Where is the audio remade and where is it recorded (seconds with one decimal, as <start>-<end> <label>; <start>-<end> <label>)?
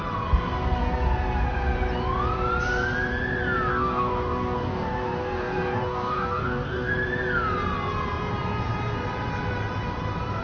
0.0-3.7 recorded; 3.7-6.9 remade; 6.9-10.4 recorded